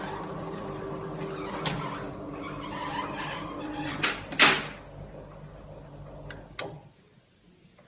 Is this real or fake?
real